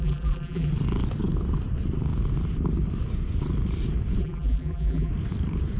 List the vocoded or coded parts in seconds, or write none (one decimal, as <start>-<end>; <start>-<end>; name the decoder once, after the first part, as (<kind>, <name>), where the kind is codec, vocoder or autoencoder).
0.0-0.7 (vocoder, BigVGAN v2); 4.2-5.1